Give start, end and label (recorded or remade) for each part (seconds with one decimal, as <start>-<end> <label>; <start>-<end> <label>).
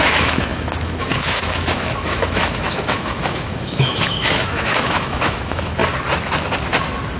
0.0-5.8 remade; 5.8-7.2 recorded